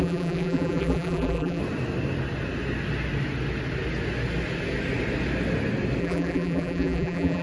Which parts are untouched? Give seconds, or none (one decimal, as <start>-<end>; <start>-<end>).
1.6-6.0